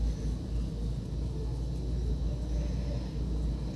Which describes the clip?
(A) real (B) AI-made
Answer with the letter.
A